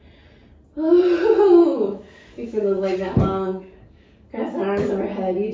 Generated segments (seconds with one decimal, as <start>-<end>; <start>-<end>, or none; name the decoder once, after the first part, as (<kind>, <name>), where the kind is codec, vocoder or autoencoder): 1.6-4.9 (codec, DAC)